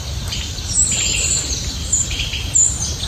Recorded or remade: recorded